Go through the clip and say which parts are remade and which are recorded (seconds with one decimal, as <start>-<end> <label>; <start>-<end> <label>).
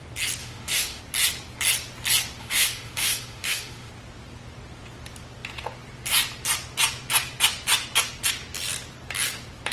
0.0-0.4 recorded; 0.4-1.0 remade; 1.0-2.4 recorded; 2.4-3.9 remade; 3.9-9.7 recorded